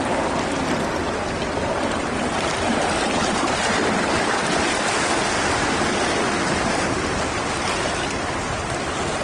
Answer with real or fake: real